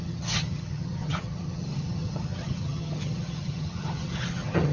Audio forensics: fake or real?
fake